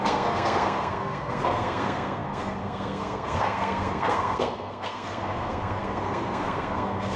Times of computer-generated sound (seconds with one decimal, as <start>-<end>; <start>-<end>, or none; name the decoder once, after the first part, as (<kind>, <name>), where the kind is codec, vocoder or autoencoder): 0.0-7.2 (codec, SNAC)